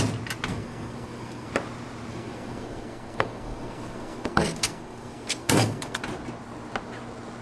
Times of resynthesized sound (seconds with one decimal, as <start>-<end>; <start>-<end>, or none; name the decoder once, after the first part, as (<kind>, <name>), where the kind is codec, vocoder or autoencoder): 0.5-1.5 (codec, SNAC); 2.1-6.0

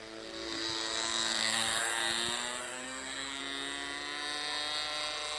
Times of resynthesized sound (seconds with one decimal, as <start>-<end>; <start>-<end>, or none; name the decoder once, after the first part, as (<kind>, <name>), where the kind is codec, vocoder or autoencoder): 0.0-0.6 (codec, SNAC); 1.4-1.9; 2.6-3.4